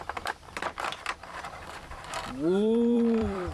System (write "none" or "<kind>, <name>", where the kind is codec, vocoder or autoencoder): vocoder, BigVGAN v2